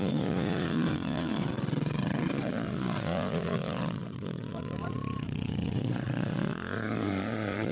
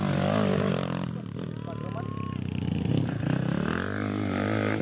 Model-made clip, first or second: first